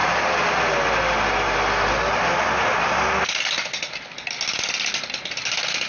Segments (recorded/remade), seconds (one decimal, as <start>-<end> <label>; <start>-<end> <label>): 0.0-5.9 recorded